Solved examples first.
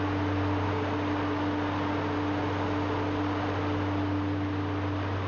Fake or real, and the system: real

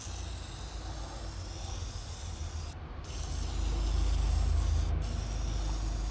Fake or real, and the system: real